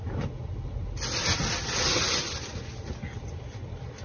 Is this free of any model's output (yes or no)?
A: yes